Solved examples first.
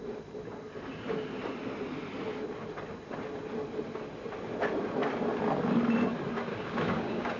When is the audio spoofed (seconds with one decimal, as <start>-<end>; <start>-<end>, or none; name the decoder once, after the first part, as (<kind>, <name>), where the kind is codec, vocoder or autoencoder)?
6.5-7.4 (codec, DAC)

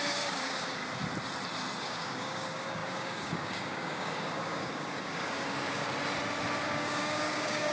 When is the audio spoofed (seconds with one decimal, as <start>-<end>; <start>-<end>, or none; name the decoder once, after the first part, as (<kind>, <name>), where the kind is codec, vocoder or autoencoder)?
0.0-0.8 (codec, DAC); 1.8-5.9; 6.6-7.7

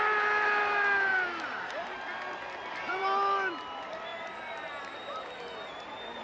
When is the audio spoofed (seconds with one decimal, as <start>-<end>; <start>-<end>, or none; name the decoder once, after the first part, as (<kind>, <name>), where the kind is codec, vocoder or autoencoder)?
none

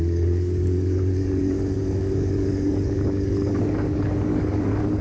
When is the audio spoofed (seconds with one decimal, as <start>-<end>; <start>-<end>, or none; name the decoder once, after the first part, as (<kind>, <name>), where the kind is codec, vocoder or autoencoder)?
0.0-5.0 (codec, DAC)